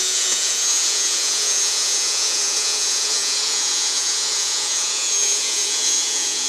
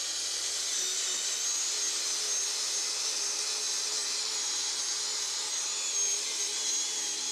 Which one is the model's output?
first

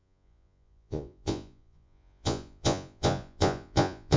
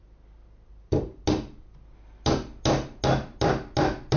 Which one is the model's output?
first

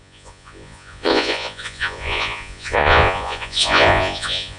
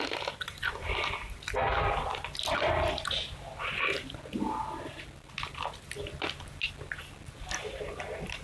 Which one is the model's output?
first